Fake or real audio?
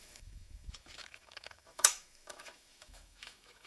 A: fake